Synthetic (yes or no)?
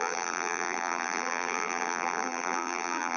yes